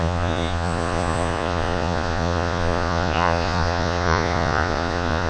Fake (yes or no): yes